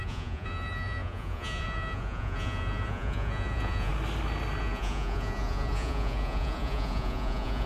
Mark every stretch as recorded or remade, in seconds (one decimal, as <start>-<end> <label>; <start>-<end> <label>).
0.0-3.9 remade; 3.9-4.6 recorded; 4.6-7.7 remade